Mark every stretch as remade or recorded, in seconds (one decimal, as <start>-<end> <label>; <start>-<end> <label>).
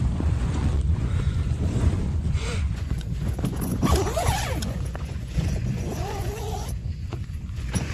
0.0-7.9 remade